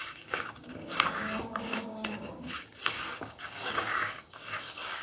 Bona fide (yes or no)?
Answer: no